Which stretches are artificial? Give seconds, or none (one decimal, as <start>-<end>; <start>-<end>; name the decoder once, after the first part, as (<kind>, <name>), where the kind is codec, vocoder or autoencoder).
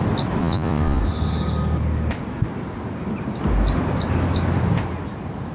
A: 0.4-1.0 (vocoder, Vocos)